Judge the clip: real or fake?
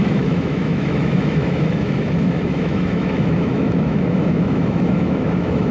fake